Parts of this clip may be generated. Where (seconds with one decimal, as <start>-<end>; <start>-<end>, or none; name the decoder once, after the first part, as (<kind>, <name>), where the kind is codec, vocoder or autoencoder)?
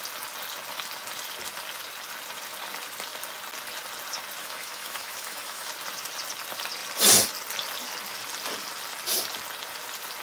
4.4-5.7 (autoencoder, DAC-VAE)